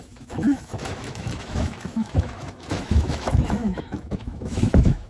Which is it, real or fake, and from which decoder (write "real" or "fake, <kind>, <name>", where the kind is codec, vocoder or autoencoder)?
fake, autoencoder, DAC-VAE